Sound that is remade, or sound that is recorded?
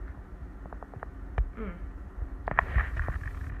recorded